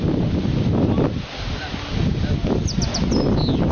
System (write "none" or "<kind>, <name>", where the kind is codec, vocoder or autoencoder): none